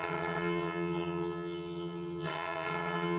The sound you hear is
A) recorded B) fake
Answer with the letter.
B